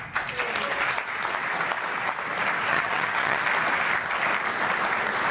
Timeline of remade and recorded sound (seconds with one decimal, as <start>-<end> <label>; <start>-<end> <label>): 0.0-2.7 recorded; 2.7-3.4 remade; 3.4-5.3 recorded